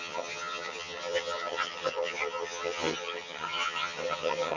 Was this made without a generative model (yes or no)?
no